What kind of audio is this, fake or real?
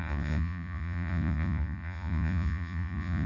fake